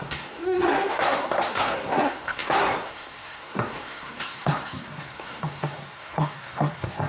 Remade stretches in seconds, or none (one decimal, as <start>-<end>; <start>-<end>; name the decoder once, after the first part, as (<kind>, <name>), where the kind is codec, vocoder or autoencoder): 0.0-7.1 (codec, SNAC)